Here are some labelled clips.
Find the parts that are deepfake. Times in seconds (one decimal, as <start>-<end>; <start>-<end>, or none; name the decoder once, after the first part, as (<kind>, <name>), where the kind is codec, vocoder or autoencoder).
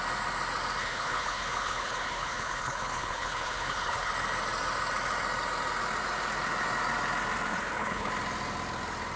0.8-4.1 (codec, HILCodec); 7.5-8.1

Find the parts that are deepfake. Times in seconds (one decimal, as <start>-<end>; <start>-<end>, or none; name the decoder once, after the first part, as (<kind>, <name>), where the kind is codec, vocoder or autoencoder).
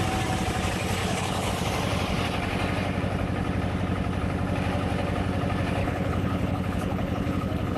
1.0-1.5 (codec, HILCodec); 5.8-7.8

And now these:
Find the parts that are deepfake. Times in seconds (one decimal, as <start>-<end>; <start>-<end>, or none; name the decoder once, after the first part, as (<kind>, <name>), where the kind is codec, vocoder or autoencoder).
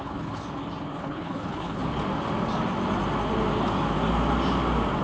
0.0-0.4 (codec, HILCodec); 1.0-1.8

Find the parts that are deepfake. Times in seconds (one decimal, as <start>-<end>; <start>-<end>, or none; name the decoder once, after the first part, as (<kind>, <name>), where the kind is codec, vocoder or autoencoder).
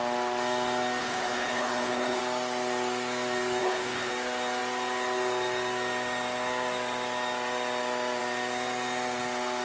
1.0-2.2 (codec, HILCodec); 3.6-4.1